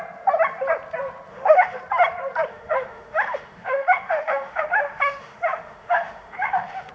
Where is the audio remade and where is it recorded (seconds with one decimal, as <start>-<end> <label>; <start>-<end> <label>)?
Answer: 0.0-1.3 recorded; 1.3-1.8 remade; 1.8-2.5 recorded; 2.5-6.9 remade